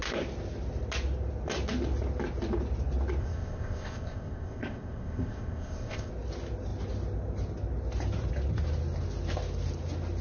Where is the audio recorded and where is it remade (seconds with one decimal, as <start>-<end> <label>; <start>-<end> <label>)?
0.0-3.2 recorded; 3.2-6.1 remade; 6.1-10.2 recorded